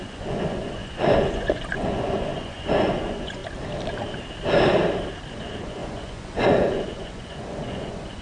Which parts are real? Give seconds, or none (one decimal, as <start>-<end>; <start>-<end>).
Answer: 3.4-5.3